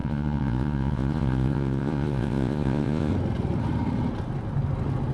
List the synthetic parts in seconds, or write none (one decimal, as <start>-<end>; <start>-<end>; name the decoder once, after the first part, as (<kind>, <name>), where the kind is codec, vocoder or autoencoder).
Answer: 0.0-3.1 (vocoder, Vocos)